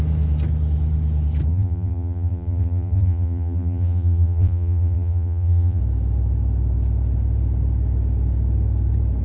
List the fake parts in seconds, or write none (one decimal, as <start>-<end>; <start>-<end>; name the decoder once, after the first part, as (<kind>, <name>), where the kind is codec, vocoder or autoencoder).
1.5-5.8 (vocoder, BigVGAN v2)